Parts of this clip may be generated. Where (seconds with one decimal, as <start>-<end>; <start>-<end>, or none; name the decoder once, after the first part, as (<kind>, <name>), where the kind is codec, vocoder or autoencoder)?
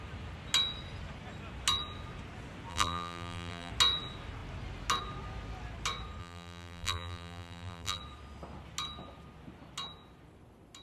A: 2.7-3.7 (vocoder, BigVGAN v2); 6.2-8.0